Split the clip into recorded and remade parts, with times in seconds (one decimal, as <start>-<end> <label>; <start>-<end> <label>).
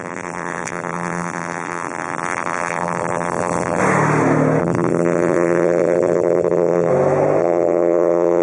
0.0-3.8 remade; 3.8-4.6 recorded; 4.6-6.9 remade; 6.9-7.4 recorded; 7.4-8.4 remade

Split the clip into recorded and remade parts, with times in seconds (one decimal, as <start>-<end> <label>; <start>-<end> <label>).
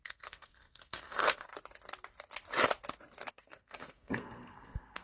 0.0-1.5 remade; 1.5-3.3 recorded; 3.3-5.0 remade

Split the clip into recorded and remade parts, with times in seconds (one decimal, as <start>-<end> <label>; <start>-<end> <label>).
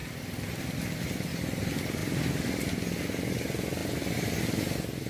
0.0-0.6 remade; 0.6-2.0 recorded; 2.0-2.7 remade; 2.7-3.8 recorded; 3.8-4.6 remade; 4.6-5.1 recorded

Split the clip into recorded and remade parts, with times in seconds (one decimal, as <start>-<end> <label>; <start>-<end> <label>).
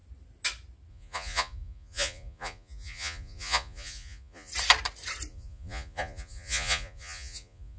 0.0-0.9 recorded; 0.9-4.5 remade; 4.5-5.3 recorded; 5.3-7.8 remade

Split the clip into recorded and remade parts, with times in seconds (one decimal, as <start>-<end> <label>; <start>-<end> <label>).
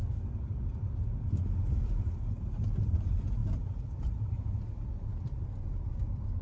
0.0-1.6 recorded; 1.6-6.4 remade